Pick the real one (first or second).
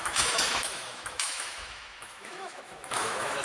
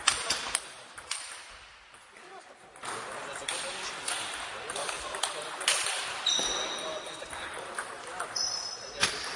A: second